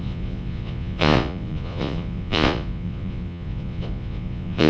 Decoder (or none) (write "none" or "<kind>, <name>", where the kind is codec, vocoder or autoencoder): vocoder, Vocos